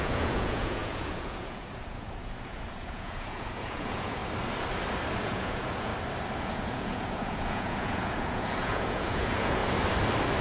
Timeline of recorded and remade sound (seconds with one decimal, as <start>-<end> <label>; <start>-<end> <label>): 0.0-4.2 remade; 4.2-5.2 recorded; 5.2-5.9 remade; 5.9-6.4 recorded; 6.4-9.6 remade; 9.6-10.4 recorded